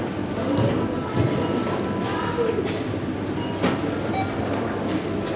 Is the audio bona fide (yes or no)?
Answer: yes